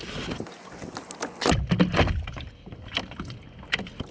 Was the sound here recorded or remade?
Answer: recorded